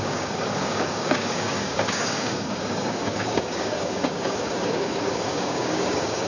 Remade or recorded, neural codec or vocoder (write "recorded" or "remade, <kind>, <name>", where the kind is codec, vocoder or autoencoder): remade, codec, DAC